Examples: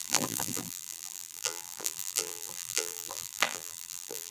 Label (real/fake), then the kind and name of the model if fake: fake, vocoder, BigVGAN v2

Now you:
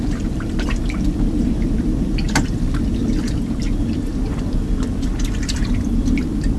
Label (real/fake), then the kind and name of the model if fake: fake, vocoder, BigVGAN v2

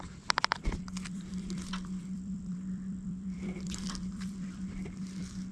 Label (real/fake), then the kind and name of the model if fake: fake, vocoder, BigVGAN v2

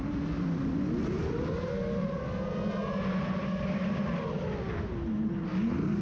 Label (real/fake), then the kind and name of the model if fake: real